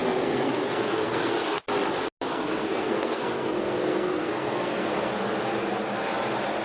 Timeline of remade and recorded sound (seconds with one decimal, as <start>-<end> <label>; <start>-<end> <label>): 0.0-1.6 remade; 1.6-2.3 recorded; 2.3-5.1 remade; 5.1-6.6 recorded